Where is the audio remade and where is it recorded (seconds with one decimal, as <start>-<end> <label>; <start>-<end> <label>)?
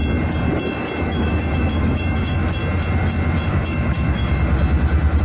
0.0-1.0 recorded; 1.0-2.6 remade; 2.6-3.5 recorded; 3.5-4.2 remade; 4.2-5.2 recorded